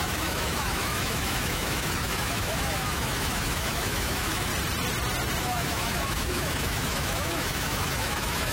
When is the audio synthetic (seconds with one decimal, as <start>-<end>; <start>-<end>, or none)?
0.0-4.5; 5.4-8.5